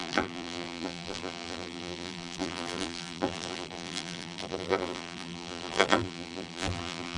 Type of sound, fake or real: fake